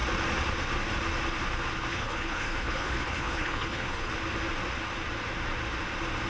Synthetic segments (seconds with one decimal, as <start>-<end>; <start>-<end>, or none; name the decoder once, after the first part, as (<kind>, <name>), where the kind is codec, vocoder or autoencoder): 1.9-4.1 (codec, HILCodec)